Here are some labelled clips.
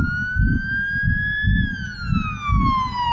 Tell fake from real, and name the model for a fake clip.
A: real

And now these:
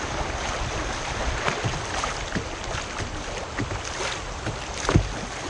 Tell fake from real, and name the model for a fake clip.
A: real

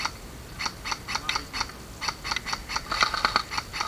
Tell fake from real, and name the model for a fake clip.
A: real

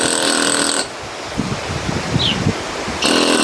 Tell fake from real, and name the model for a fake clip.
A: real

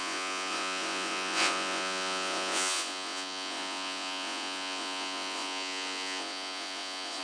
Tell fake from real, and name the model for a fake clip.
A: fake, vocoder, Vocos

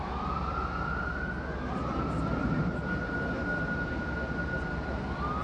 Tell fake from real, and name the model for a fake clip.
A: real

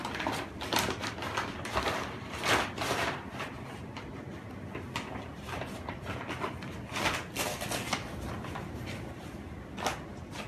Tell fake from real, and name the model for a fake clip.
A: real